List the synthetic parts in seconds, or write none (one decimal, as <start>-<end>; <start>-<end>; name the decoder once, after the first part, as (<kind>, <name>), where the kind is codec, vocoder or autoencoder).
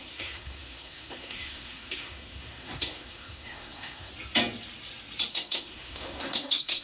0.0-4.1 (codec, SNAC); 5.3-6.8